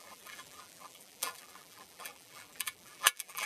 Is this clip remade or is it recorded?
remade